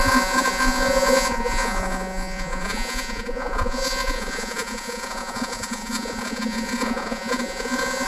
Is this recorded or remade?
remade